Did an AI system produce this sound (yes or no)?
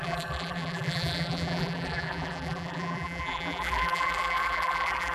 yes